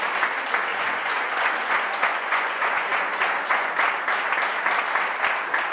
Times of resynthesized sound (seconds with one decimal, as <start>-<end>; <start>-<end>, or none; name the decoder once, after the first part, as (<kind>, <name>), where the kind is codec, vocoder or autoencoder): 0.7-3.7 (vocoder, Vocos)